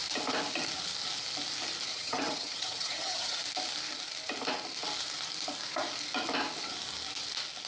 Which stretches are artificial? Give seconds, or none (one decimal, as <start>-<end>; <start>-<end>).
1.9-3.4